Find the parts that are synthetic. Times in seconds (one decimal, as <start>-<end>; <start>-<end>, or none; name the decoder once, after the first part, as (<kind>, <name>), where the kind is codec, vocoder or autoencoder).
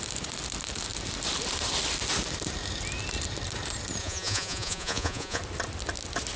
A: 4.0-5.4 (vocoder, Vocos)